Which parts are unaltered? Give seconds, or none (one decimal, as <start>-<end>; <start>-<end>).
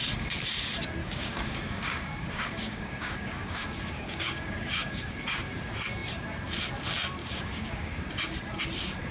0.0-1.0; 5.5-7.2; 8.0-9.1